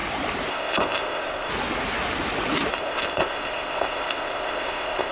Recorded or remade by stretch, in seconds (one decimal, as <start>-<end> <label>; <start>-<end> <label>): 0.0-0.5 recorded; 0.5-1.5 remade; 1.5-2.7 recorded; 2.7-5.1 remade